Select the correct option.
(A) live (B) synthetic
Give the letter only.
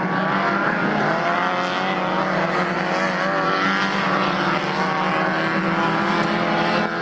A